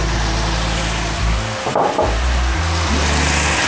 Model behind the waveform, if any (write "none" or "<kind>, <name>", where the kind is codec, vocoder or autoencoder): none